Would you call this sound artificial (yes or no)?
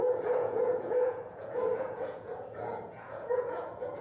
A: yes